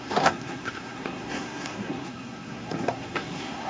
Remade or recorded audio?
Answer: remade